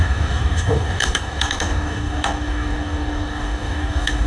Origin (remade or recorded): remade